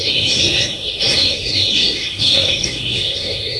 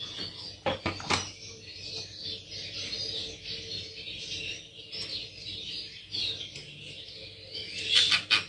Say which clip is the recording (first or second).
second